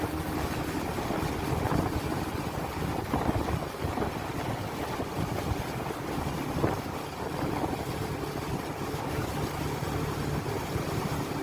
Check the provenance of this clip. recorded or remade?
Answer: remade